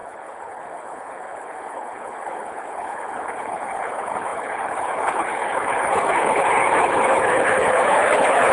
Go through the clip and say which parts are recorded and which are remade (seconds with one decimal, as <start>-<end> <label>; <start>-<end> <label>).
0.0-8.5 remade